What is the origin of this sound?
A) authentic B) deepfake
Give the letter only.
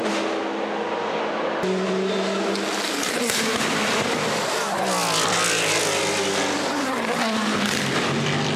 A